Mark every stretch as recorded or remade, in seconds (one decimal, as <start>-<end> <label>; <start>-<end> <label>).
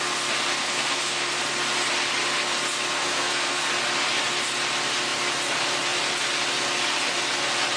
0.0-0.6 recorded; 0.6-1.4 remade; 1.4-3.0 recorded; 3.0-3.7 remade; 3.7-7.8 recorded